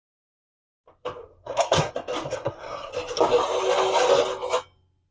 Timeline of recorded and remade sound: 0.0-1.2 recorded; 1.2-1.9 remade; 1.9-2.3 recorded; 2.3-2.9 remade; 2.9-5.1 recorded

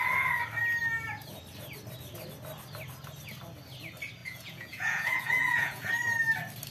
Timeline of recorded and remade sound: 0.0-4.2 recorded; 4.2-5.9 remade; 5.9-6.7 recorded

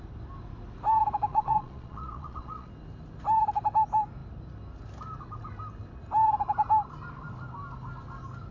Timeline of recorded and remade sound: 0.0-1.3 recorded; 1.3-2.7 remade; 2.7-8.5 recorded

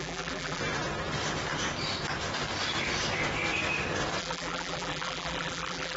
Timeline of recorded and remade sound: 0.0-0.6 remade; 0.6-4.2 recorded; 4.2-6.0 remade

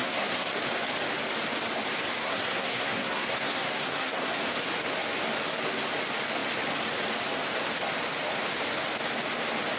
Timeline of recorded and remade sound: 0.0-0.6 remade; 0.6-2.2 recorded; 2.2-4.3 remade; 4.3-9.8 recorded

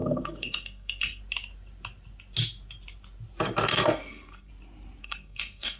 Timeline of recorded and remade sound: 0.0-1.2 remade; 1.2-3.7 recorded; 3.7-4.5 remade; 4.5-5.0 recorded; 5.0-5.8 remade

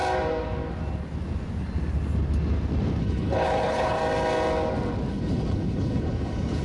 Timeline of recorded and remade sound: 0.0-3.0 recorded; 3.0-4.0 remade; 4.0-5.1 recorded; 5.1-6.6 remade